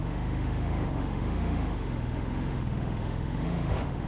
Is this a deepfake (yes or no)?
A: yes